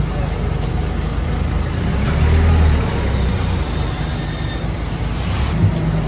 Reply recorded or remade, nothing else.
recorded